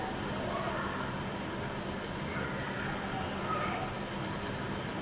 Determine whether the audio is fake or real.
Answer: real